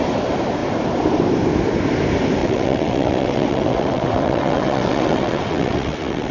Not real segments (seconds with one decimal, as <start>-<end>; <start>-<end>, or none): 2.4-6.3